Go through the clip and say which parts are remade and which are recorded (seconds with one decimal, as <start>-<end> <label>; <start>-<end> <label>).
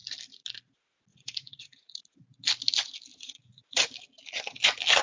0.0-1.1 recorded; 1.1-2.0 remade; 2.0-3.1 recorded; 3.1-3.8 remade; 3.8-5.0 recorded